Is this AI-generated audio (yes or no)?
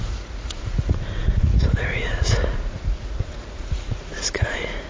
yes